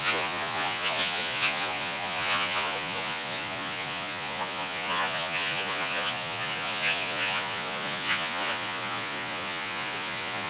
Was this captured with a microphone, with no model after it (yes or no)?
no